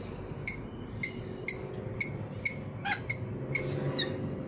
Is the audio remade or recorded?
recorded